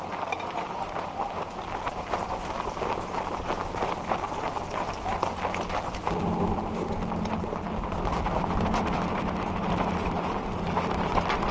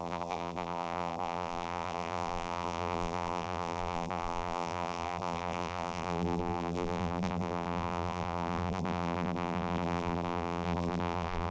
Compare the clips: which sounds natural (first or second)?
first